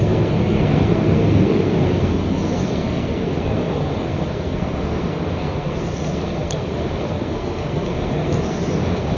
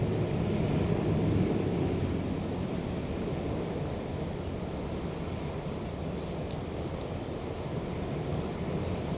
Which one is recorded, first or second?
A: second